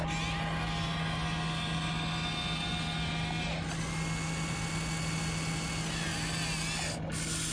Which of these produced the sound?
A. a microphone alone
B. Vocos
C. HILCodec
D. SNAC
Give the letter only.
A